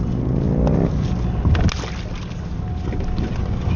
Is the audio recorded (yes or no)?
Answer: yes